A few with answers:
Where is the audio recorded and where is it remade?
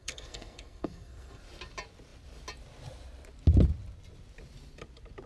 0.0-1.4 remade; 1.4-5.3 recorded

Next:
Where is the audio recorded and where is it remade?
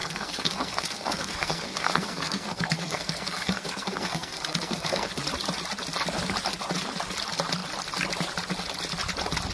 0.0-5.1 remade; 5.1-9.5 recorded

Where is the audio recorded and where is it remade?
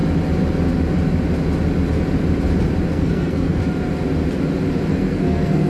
0.0-2.9 recorded; 2.9-3.6 remade; 3.6-4.9 recorded; 4.9-5.7 remade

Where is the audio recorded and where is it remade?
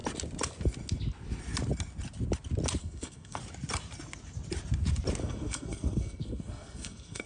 0.0-2.8 recorded; 2.8-3.4 remade; 3.4-5.2 recorded; 5.2-7.3 remade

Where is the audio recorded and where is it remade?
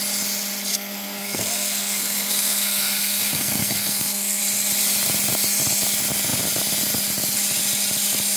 0.0-0.7 recorded; 0.7-4.4 remade; 4.4-8.4 recorded